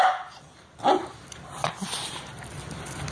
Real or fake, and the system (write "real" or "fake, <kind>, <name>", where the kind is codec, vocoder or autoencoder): real